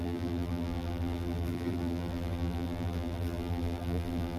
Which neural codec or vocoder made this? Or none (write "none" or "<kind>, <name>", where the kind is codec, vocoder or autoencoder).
vocoder, BigVGAN v2